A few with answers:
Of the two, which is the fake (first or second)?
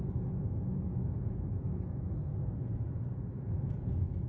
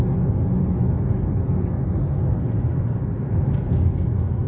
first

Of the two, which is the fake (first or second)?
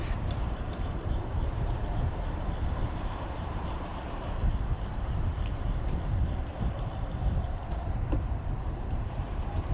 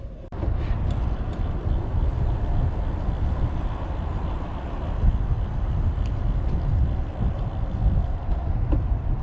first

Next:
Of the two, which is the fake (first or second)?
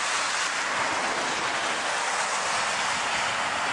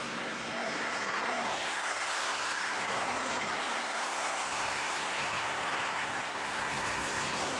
second